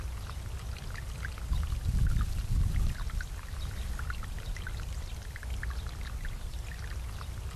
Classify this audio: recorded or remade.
recorded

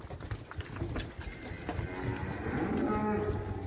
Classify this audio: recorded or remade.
recorded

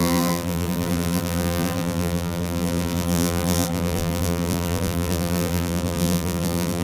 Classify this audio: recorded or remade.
remade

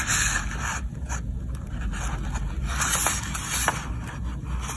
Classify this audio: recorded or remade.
recorded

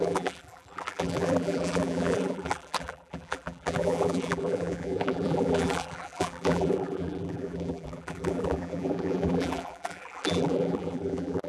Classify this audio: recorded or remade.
remade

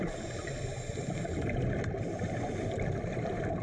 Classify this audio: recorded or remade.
recorded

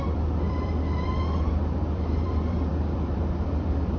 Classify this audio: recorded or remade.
remade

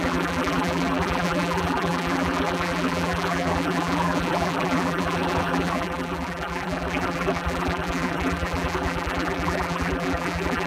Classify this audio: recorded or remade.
remade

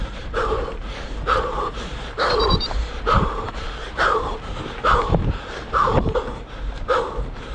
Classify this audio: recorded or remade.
remade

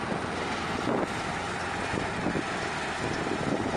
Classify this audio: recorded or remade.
recorded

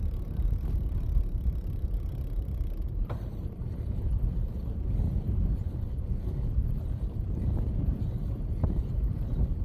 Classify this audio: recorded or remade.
remade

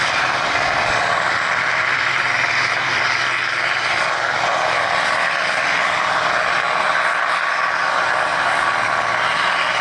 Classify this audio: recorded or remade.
remade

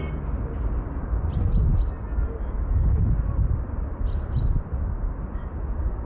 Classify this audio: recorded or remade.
recorded